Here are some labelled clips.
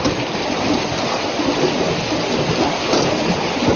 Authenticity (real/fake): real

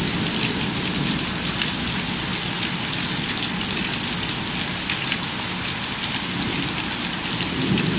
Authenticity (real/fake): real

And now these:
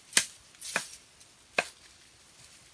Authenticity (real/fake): real